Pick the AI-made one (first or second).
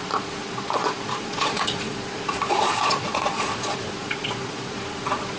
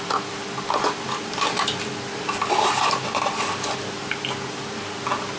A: first